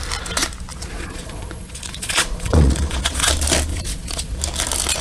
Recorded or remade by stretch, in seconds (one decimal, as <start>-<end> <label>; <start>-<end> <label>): 0.0-0.7 recorded; 0.7-3.3 remade; 3.3-3.7 recorded; 3.7-4.4 remade; 4.4-5.0 recorded